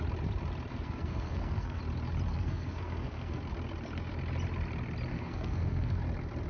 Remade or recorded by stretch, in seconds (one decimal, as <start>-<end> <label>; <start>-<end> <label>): 0.0-0.7 recorded; 0.7-1.8 remade; 1.8-2.3 recorded; 2.3-3.4 remade; 3.4-5.1 recorded; 5.1-6.0 remade; 6.0-6.5 recorded